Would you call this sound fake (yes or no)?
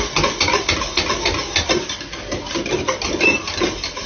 no